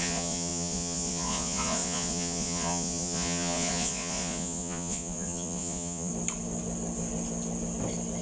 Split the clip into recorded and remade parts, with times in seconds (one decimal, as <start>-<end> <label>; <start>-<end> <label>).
0.0-6.1 remade; 6.1-8.2 recorded